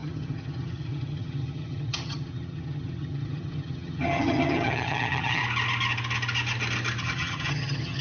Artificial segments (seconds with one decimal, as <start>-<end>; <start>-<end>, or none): 0.0-5.4; 7.0-8.0